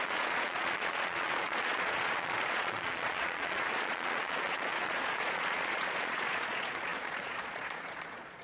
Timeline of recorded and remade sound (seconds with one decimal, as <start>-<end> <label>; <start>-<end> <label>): 0.0-8.4 remade